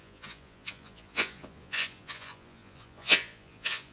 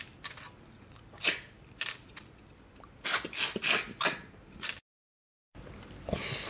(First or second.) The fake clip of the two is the first